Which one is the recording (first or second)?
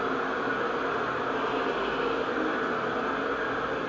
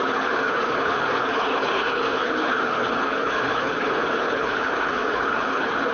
first